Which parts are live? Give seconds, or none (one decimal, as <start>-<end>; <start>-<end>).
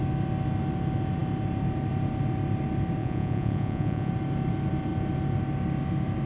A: 0.0-3.0; 4.1-6.3